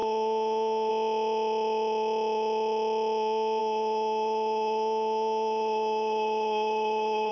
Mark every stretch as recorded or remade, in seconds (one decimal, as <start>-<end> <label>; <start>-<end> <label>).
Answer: 0.0-0.9 remade; 0.9-3.6 recorded; 3.6-7.3 remade